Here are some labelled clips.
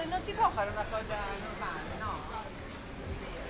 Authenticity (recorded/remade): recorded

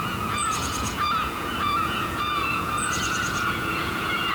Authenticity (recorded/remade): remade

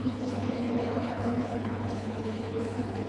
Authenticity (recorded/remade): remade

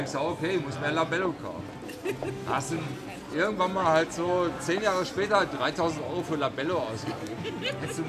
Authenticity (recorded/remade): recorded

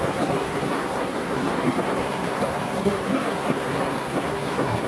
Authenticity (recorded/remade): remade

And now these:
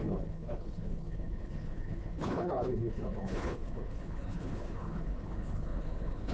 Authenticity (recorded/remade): remade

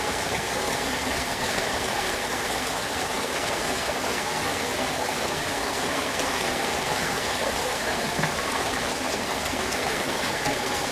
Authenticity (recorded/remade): remade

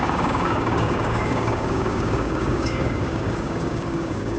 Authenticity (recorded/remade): remade